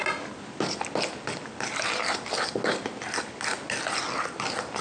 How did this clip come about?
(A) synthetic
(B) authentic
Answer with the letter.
B